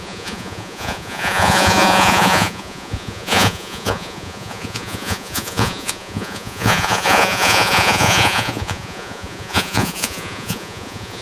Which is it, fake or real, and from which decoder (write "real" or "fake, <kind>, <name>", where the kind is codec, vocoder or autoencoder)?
fake, vocoder, Vocos